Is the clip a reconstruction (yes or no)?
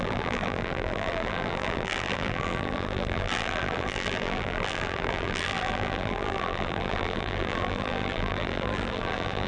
yes